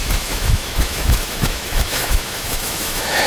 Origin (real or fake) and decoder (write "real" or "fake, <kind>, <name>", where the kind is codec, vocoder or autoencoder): fake, autoencoder, DAC-VAE